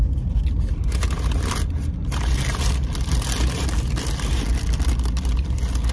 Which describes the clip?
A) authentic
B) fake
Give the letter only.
A